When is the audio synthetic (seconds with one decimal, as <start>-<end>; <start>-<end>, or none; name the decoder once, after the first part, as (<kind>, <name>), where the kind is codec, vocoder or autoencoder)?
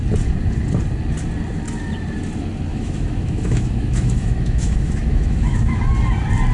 2.7-5.8 (autoencoder, DAC-VAE)